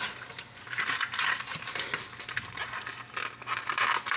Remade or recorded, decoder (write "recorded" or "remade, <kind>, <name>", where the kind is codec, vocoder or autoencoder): recorded